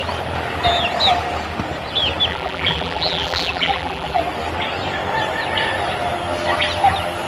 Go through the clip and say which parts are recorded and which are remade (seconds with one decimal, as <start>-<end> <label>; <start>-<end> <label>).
0.0-2.3 recorded; 2.3-4.2 remade; 4.2-7.3 recorded

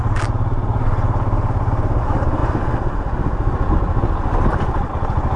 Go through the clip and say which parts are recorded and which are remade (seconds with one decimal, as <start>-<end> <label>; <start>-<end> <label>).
0.0-2.4 remade; 2.4-4.9 recorded; 4.9-5.4 remade